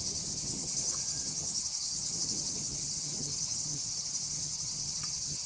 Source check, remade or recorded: remade